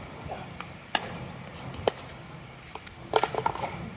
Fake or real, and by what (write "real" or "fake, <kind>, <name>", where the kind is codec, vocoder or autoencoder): real